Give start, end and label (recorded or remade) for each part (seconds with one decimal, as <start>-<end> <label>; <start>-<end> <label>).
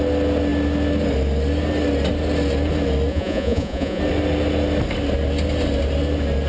0.0-3.1 recorded; 3.1-4.0 remade; 4.0-6.5 recorded